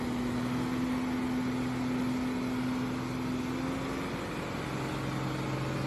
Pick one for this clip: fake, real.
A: real